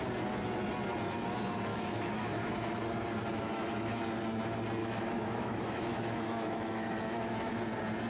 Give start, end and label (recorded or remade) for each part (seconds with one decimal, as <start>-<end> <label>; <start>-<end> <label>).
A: 0.0-1.7 recorded; 1.7-2.8 remade; 2.8-3.3 recorded; 3.3-4.0 remade; 4.0-4.8 recorded; 4.8-7.5 remade; 7.5-8.1 recorded